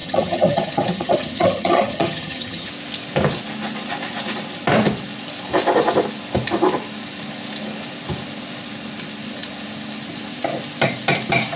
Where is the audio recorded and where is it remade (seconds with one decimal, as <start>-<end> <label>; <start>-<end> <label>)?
0.0-2.7 remade; 2.7-11.6 recorded